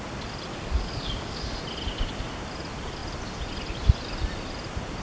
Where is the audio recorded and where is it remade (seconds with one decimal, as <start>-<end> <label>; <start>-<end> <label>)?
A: 0.0-0.5 recorded; 0.5-1.6 remade; 1.6-5.0 recorded